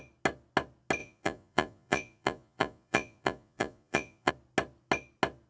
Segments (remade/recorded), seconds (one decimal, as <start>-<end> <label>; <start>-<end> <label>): 0.0-1.0 recorded; 1.0-4.3 remade; 4.3-5.5 recorded